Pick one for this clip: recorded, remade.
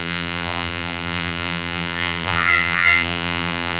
remade